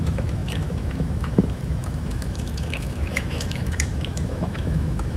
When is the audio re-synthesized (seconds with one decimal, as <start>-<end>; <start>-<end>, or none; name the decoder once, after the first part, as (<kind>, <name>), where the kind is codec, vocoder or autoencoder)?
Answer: 0.0-5.2 (autoencoder, DAC-VAE)